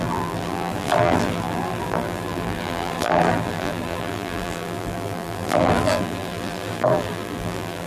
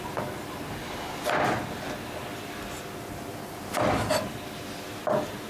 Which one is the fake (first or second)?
first